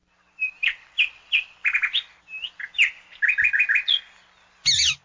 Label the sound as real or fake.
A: real